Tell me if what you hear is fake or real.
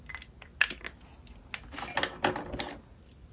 real